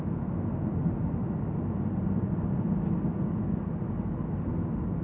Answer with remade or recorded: recorded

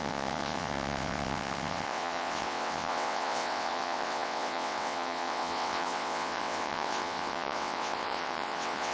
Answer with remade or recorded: remade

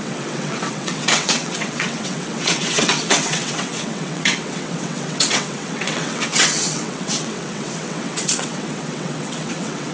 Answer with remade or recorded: remade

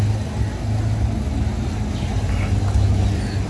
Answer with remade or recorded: recorded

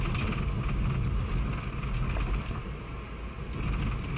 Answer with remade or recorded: recorded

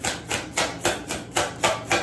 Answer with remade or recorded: recorded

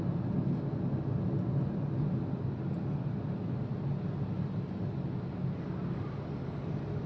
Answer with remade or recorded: recorded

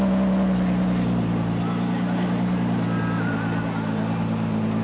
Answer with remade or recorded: recorded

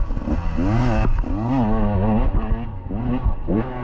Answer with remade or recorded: recorded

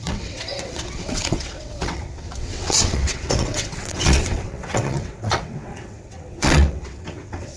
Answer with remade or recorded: remade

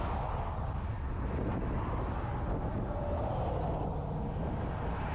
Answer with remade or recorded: recorded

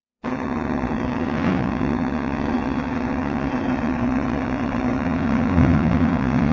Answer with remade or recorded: remade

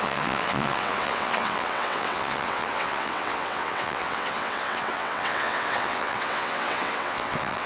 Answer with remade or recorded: remade